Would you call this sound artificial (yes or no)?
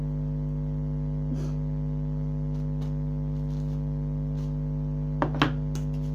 no